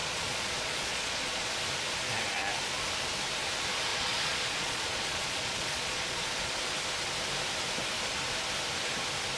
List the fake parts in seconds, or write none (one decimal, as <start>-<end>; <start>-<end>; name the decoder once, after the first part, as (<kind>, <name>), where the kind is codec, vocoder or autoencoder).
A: 0.0-1.5 (vocoder, Vocos); 3.9-6.5